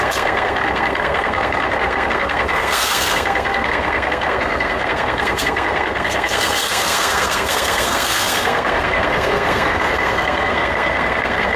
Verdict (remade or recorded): remade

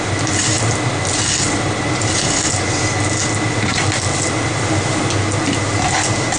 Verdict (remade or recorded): recorded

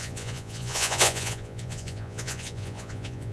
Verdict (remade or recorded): remade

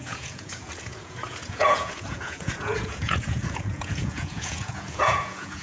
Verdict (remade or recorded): remade